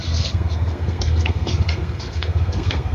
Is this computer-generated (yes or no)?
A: yes